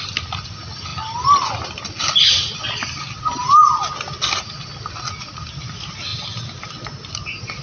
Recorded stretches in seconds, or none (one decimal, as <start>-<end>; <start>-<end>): 0.0-7.6